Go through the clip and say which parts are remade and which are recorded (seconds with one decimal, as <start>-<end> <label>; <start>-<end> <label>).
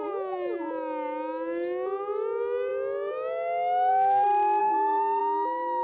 0.0-4.6 recorded; 4.6-5.2 remade; 5.2-5.8 recorded